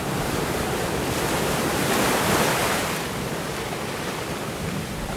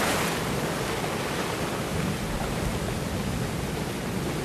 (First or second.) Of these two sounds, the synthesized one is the first